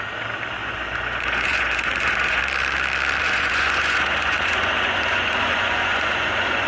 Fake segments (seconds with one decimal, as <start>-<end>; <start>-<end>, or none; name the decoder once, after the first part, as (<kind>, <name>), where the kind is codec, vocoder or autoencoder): 0.6-2.4 (vocoder, Vocos); 3.2-6.7